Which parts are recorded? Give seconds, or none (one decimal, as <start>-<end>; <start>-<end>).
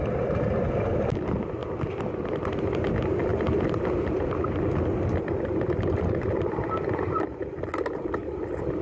0.0-8.8